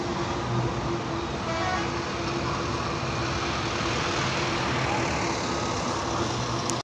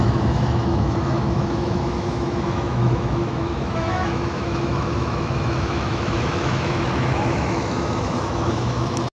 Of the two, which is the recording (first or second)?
first